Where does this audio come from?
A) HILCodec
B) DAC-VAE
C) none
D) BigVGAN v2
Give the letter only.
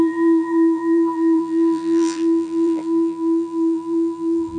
D